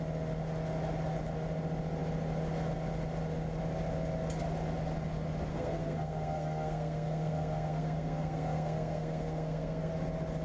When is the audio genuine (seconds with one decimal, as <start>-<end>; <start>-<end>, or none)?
0.0-5.5; 9.9-10.4